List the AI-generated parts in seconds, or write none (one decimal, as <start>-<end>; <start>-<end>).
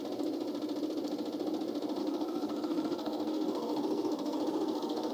2.0-5.1